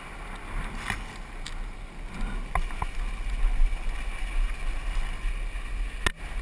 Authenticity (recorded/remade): recorded